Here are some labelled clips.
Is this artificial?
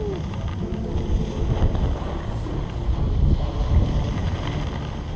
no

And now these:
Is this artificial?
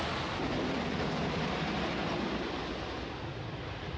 no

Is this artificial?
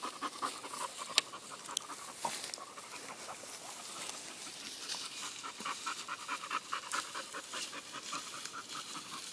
no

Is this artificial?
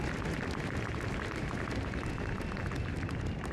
no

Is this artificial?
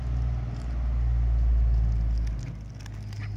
no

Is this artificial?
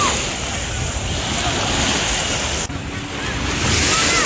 no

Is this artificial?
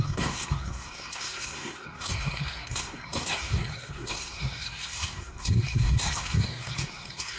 yes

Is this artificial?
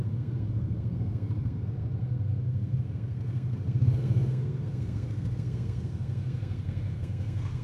yes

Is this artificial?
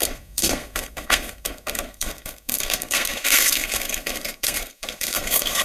yes